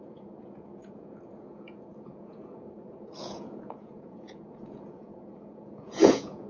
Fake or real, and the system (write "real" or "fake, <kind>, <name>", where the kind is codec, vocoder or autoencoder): fake, vocoder, Vocos